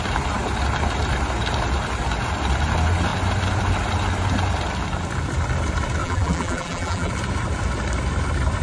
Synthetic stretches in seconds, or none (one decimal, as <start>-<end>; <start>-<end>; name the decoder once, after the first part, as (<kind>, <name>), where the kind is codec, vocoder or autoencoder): 6.0-7.1 (vocoder, BigVGAN v2)

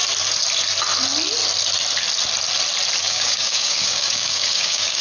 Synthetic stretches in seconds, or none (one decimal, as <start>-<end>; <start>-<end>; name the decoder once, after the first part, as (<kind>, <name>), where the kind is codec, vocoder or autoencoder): 3.0-5.0 (codec, DAC)

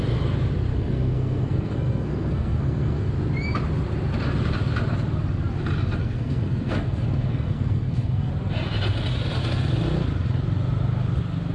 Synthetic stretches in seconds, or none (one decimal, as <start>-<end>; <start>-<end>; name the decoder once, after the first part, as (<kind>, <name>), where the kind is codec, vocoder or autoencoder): 0.7-3.1 (codec, SNAC); 6.0-8.3

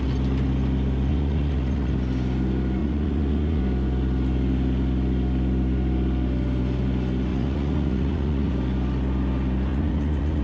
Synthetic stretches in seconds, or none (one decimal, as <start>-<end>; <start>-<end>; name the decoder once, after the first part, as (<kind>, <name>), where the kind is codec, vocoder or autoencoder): 1.1-1.9 (vocoder, Vocos); 2.8-3.6; 7.3-8.5; 9.7-10.4

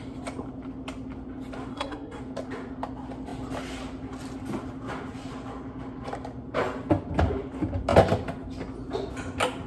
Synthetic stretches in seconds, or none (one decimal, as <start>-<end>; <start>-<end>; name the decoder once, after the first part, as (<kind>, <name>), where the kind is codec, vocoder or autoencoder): 1.7-2.2 (codec, SNAC)

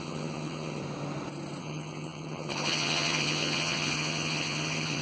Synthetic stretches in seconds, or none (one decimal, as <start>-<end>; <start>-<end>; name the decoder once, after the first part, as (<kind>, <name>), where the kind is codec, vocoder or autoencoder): 0.0-0.8 (vocoder, HiFi-GAN); 1.6-5.0